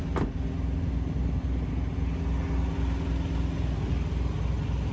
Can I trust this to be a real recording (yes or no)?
yes